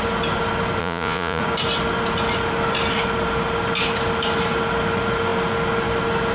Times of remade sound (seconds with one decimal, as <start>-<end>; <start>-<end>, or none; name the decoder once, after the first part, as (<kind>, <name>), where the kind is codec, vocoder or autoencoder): 0.8-1.4 (vocoder, Vocos)